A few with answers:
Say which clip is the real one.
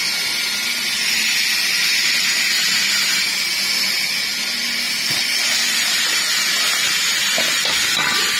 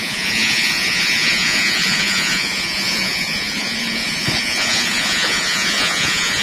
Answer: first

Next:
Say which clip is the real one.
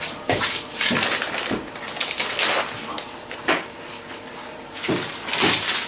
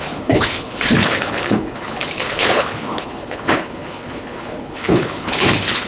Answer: first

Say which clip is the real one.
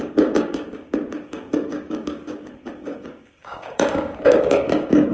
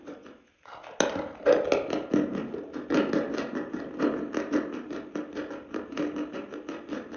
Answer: second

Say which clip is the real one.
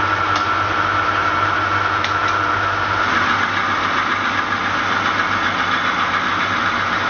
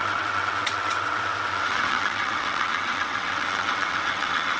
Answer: first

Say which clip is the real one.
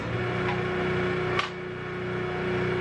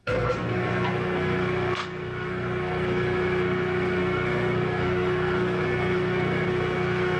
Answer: first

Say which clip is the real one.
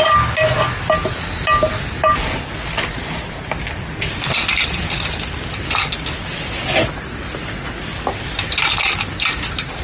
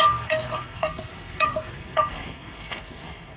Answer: first